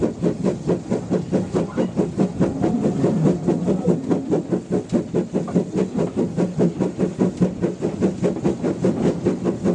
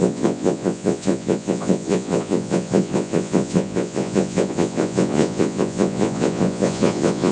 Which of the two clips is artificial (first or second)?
second